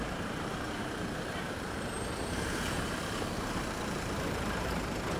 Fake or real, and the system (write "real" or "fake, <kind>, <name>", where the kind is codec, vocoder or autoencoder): fake, vocoder, BigVGAN v2